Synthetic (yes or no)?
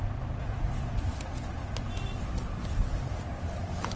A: no